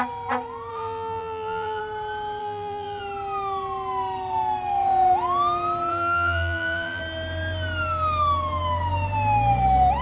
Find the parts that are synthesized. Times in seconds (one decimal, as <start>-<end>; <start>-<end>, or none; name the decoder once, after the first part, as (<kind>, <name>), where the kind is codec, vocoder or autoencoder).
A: 0.7-1.8 (vocoder, BigVGAN v2); 2.4-3.0; 5.9-7.0